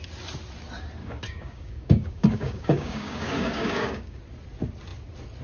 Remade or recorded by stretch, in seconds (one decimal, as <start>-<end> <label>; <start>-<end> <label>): 0.0-1.0 recorded; 1.0-4.2 remade; 4.2-5.4 recorded